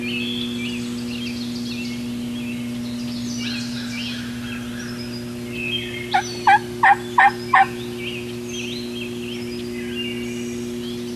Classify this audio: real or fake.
real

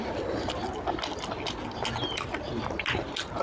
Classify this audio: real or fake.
real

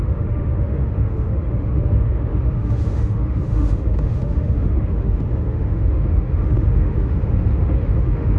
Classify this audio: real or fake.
fake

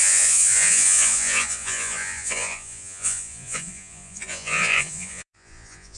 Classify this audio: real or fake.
fake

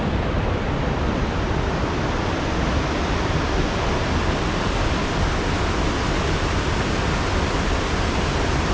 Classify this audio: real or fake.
real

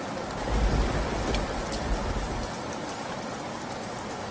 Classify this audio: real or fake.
real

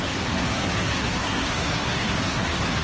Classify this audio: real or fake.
fake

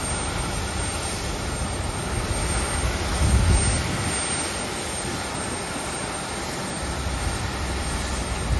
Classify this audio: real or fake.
real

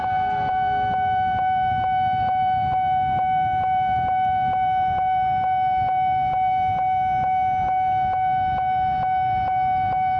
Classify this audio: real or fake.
real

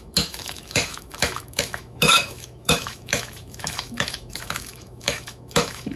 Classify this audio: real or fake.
fake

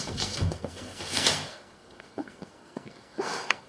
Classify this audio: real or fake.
fake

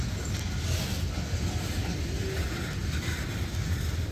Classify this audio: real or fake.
real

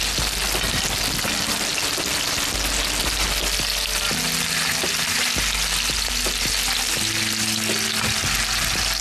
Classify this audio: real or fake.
real